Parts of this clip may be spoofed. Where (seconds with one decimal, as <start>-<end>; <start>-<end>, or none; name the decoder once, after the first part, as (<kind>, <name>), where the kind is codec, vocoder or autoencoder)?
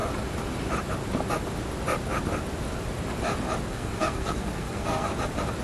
3.7-5.1 (codec, SNAC)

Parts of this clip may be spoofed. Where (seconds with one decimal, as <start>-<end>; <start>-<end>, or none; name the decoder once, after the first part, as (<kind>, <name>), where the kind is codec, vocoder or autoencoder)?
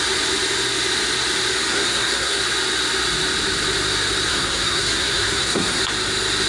1.7-2.4 (codec, SNAC); 4.3-5.8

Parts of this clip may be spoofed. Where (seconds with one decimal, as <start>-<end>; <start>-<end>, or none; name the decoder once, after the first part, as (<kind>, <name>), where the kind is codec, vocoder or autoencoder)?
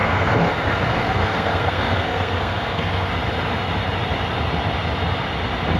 0.0-3.1 (codec, SNAC)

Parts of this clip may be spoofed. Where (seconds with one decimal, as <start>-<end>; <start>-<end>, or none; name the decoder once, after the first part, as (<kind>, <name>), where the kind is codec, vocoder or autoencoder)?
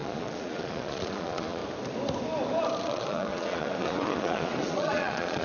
0.0-1.6 (vocoder, Vocos); 2.8-5.4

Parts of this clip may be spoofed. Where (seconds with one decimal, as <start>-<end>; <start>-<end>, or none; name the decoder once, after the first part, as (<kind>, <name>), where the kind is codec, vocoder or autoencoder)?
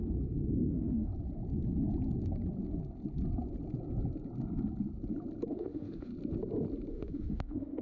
0.7-1.1 (autoencoder, DAC-VAE); 5.5-6.1; 6.9-7.8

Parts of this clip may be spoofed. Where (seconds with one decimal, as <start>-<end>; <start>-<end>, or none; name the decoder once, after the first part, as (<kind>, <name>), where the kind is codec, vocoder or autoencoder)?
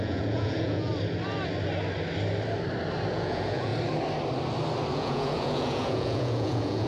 0.0-0.9 (vocoder, Vocos); 3.1-3.7; 4.9-6.9